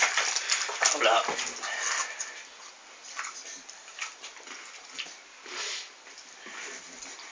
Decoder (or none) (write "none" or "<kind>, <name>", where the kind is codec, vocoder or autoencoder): none